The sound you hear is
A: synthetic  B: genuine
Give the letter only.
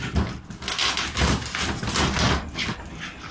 B